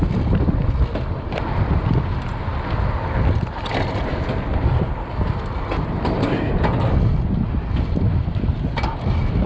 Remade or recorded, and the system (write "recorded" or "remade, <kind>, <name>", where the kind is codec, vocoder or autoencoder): recorded